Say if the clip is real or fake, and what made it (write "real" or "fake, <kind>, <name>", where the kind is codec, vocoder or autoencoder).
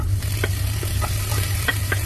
real